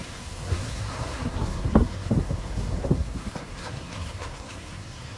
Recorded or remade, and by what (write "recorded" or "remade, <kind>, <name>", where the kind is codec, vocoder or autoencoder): remade, codec, SNAC